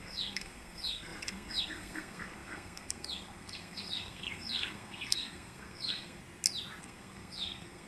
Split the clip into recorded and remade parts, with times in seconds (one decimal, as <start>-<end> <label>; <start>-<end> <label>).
0.0-6.2 remade; 6.2-6.8 recorded; 6.8-7.9 remade